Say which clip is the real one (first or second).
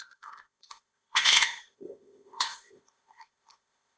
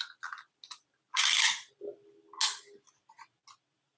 second